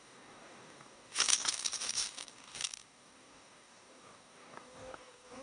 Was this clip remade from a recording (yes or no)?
yes